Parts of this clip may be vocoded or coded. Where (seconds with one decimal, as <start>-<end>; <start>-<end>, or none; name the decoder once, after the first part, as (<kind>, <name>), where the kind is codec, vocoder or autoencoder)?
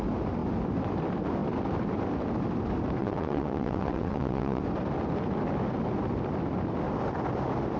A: 3.0-4.6 (vocoder, WaveNeXt)